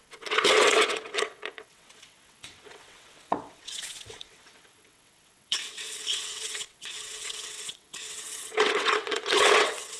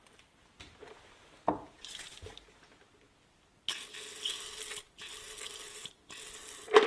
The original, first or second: second